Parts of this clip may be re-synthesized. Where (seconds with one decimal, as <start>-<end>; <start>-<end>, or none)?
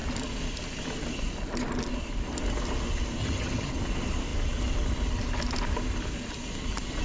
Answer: 3.2-3.7